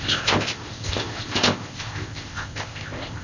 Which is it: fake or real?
fake